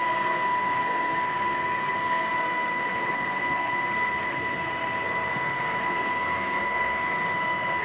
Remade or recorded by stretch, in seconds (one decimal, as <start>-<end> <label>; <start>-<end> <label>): 0.0-7.8 remade